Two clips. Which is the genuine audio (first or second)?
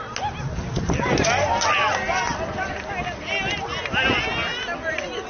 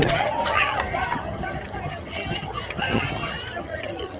first